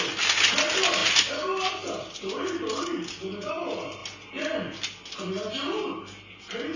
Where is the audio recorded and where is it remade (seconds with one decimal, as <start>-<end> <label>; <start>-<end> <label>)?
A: 0.0-6.8 recorded